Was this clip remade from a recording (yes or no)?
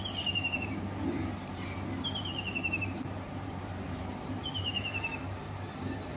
yes